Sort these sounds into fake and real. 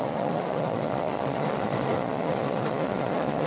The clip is fake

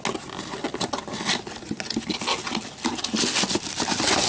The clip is real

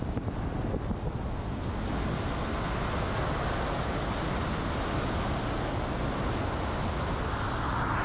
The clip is real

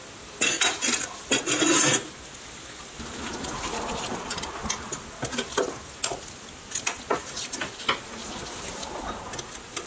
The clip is real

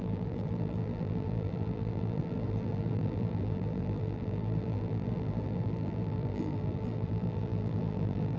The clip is fake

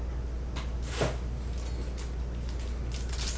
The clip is real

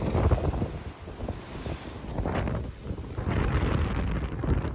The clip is real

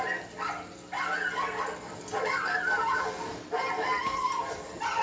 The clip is real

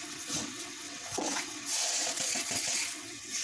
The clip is fake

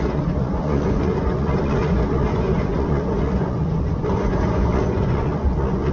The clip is fake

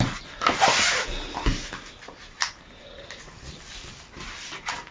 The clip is real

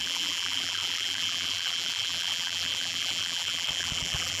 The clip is fake